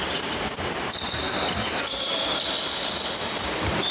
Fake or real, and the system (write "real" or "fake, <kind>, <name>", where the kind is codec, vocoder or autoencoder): fake, vocoder, BigVGAN v2